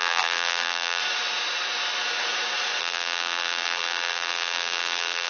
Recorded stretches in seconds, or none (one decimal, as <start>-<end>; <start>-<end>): 1.0-2.8